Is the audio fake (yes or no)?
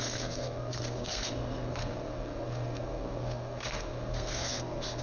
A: yes